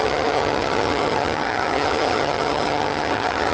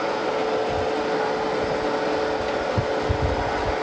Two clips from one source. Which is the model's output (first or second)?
first